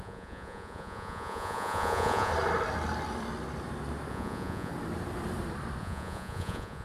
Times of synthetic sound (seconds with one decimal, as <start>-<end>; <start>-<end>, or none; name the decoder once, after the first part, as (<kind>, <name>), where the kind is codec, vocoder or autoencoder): 0.0-2.3 (vocoder, Vocos); 4.1-4.7; 5.8-6.8